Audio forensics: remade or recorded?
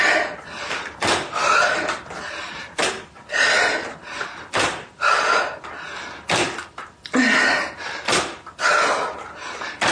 recorded